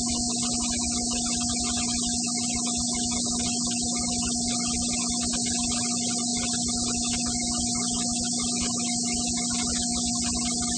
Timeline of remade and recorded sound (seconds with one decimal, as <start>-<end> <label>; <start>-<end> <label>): 0.0-10.8 recorded

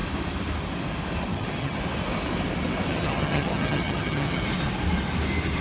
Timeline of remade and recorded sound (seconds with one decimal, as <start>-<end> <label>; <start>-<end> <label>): 0.0-1.3 recorded; 1.3-1.8 remade; 1.8-2.9 recorded; 2.9-4.4 remade; 4.4-5.6 recorded

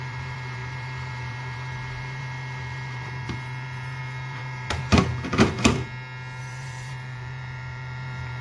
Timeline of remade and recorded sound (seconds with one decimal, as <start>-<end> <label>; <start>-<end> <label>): 0.0-4.9 remade; 4.9-6.4 recorded; 6.4-8.4 remade

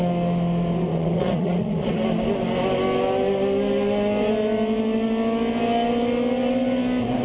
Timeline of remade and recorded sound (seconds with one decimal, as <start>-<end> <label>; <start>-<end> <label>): 0.0-0.9 recorded; 0.9-2.0 remade; 2.0-7.2 recorded

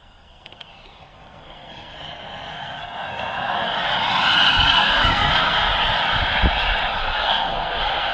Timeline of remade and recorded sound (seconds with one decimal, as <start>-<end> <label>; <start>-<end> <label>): 0.0-3.9 remade; 3.9-4.5 recorded; 4.5-5.7 remade; 5.7-7.0 recorded; 7.0-8.1 remade

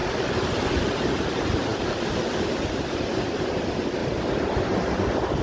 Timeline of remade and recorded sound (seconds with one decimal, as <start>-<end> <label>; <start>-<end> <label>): 0.0-1.1 remade; 1.1-1.7 recorded; 1.7-2.7 remade; 2.7-4.0 recorded; 4.0-5.4 remade

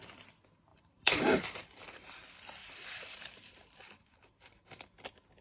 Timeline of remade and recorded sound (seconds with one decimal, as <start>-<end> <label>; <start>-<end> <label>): 0.0-0.7 recorded; 0.7-2.2 remade; 2.2-2.6 recorded; 2.6-4.9 remade; 4.9-5.4 recorded

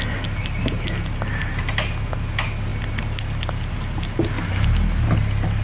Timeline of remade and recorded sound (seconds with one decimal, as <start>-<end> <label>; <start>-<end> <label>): 0.0-5.6 recorded